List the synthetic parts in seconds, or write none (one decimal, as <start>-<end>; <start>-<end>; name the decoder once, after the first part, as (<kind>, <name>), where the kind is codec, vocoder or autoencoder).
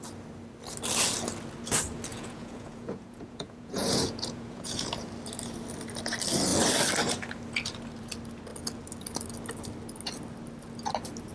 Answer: 2.1-4.9 (vocoder, Vocos)